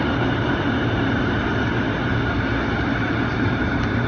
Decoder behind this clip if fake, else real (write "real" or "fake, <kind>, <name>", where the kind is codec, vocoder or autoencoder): fake, vocoder, BigVGAN v2